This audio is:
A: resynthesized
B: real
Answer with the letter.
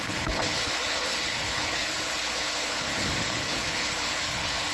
A